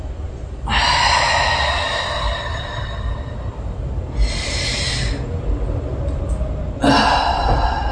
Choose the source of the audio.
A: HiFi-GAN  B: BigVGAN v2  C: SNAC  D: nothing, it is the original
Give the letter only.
D